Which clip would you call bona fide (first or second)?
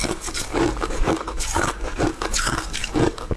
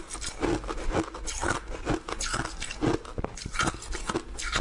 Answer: second